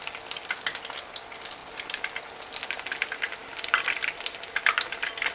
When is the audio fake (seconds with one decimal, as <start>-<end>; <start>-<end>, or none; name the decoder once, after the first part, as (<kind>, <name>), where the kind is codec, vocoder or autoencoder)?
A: 3.4-4.2 (vocoder, BigVGAN v2)